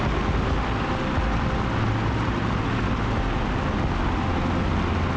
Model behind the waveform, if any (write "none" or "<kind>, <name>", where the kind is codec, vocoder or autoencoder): none